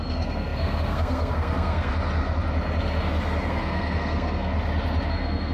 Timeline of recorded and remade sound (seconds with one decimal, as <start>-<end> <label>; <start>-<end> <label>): 0.0-1.9 remade; 1.9-3.5 recorded; 3.5-4.5 remade; 4.5-5.1 recorded; 5.1-5.5 remade